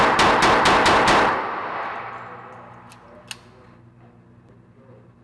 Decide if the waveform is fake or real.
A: real